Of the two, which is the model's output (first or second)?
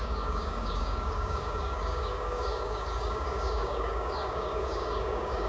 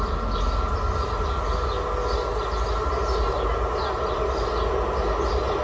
first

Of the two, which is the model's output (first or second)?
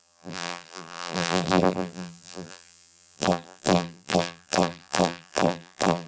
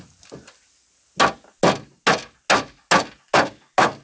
first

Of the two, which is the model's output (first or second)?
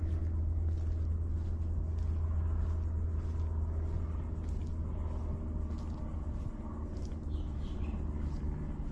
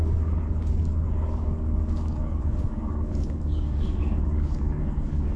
second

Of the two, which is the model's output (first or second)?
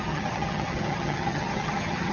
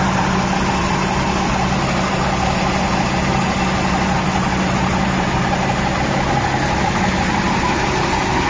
first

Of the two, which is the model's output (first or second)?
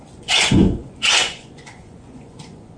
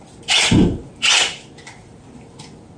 first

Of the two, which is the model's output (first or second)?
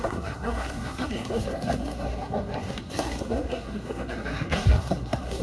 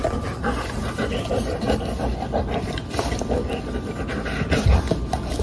first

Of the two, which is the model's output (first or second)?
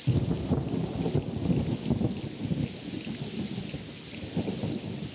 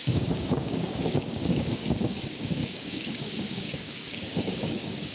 second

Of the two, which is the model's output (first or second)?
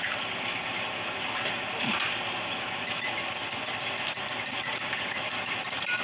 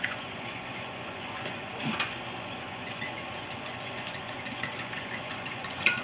second